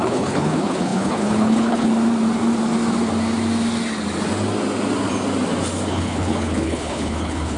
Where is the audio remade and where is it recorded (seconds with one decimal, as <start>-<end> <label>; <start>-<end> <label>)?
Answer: 0.0-1.9 remade; 1.9-5.9 recorded; 5.9-7.6 remade